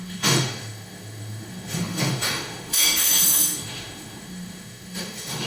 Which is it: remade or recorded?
remade